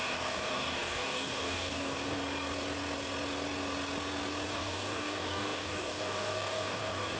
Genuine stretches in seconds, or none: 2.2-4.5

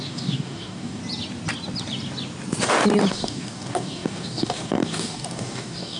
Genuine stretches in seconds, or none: 1.0-3.1

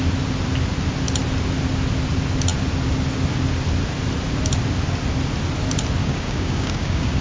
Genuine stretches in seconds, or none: 0.0-6.0

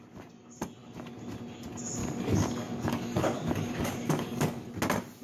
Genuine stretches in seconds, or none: 0.0-2.0; 4.7-5.2

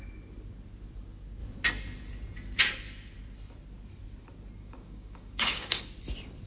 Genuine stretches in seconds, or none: 0.0-4.6; 5.9-6.5

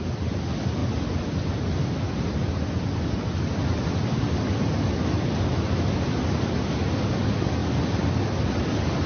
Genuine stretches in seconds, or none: 0.0-9.1

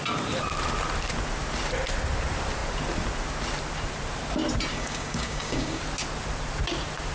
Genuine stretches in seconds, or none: 0.0-4.7; 5.8-7.1